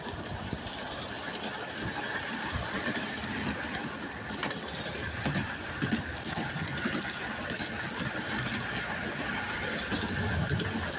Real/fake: real